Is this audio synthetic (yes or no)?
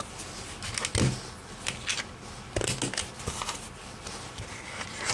no